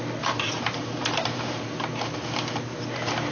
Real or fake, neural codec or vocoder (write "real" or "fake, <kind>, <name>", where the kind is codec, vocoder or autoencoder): real